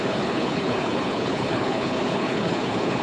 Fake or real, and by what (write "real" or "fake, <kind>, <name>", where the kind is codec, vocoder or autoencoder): fake, codec, HILCodec